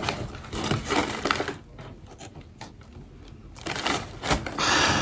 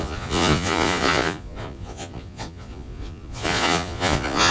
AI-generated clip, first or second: second